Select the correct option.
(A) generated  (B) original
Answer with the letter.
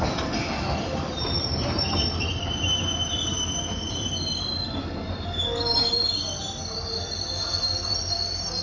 A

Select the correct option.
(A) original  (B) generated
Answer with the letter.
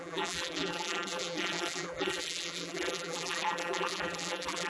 B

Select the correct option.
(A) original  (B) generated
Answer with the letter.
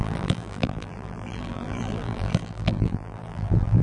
B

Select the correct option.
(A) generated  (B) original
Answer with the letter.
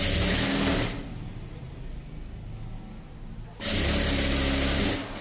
B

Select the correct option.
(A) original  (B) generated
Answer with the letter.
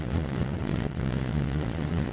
B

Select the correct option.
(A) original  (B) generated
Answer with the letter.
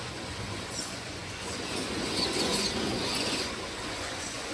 B